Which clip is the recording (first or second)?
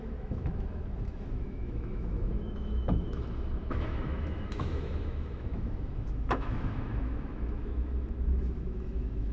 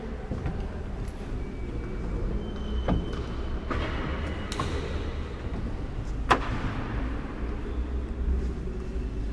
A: second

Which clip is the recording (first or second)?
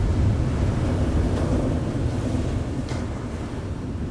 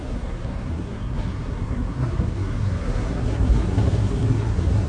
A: first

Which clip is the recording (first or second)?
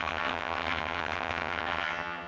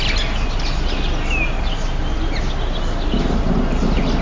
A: second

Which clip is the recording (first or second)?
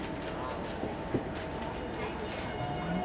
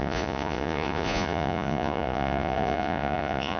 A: first